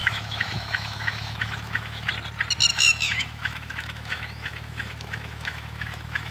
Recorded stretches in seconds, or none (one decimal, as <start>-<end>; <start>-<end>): 2.1-2.7